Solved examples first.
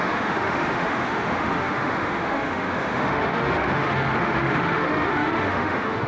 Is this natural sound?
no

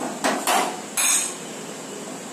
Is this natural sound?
yes